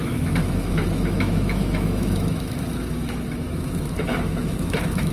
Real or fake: fake